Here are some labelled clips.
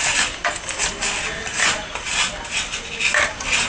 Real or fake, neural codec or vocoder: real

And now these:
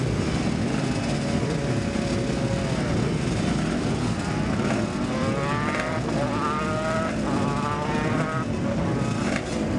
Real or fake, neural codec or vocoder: real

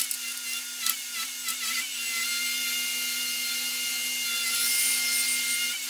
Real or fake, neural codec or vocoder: real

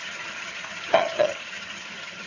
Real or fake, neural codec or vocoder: fake, vocoder, HiFi-GAN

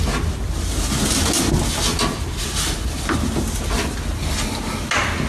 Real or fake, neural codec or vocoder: real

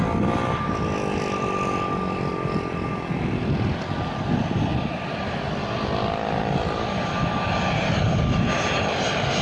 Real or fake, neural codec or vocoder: real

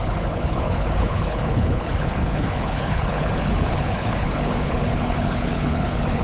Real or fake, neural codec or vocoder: fake, codec, HILCodec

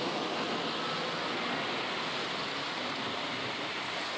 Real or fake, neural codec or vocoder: real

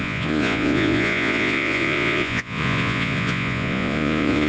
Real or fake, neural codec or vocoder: fake, vocoder, Vocos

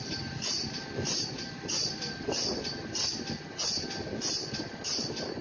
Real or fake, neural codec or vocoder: real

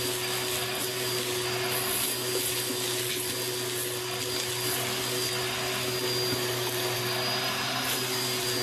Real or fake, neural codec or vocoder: real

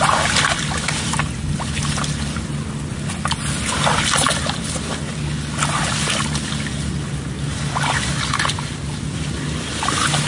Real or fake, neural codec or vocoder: real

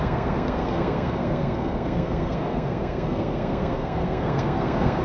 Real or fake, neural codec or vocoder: fake, codec, SNAC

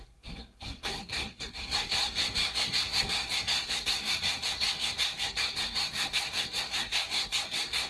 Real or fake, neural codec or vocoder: fake, codec, SNAC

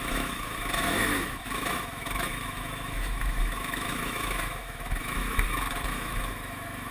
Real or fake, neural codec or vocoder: fake, autoencoder, DAC-VAE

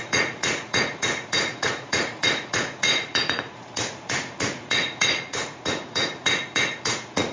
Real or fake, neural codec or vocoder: fake, vocoder, Vocos